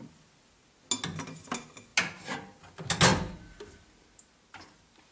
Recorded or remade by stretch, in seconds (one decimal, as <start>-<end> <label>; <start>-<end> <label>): 0.0-5.1 recorded